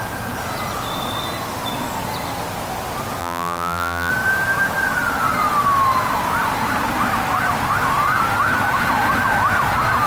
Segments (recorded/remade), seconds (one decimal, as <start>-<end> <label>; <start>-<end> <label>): 0.0-3.2 recorded; 3.2-4.1 remade; 4.1-10.1 recorded